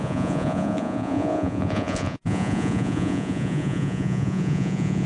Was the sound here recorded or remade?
remade